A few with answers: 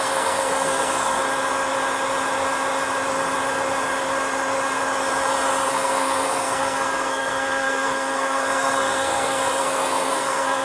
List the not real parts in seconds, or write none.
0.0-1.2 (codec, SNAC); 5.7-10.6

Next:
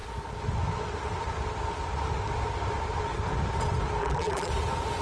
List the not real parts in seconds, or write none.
4.0-4.5 (vocoder, BigVGAN v2)

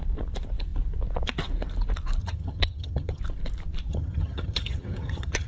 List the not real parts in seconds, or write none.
2.2-3.2 (vocoder, HiFi-GAN); 3.9-5.5

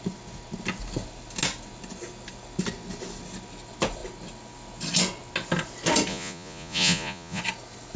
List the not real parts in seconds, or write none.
6.1-7.4 (vocoder, Vocos)

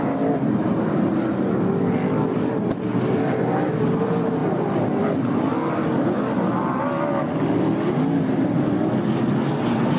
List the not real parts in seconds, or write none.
none

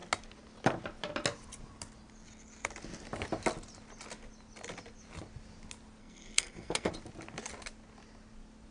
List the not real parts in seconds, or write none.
6.0-6.9 (codec, SNAC)

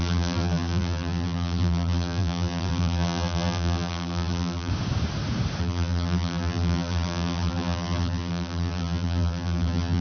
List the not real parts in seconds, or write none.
0.0-4.7 (vocoder, BigVGAN v2); 5.6-10.0